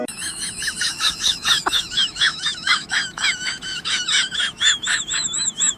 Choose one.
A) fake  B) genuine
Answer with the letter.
A